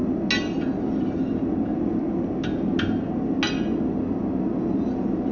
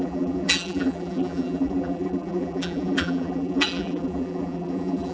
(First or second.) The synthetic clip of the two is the second